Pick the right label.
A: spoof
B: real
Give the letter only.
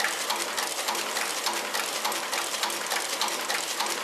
B